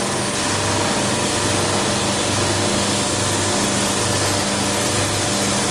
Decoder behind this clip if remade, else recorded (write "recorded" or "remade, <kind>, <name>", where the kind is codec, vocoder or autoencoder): recorded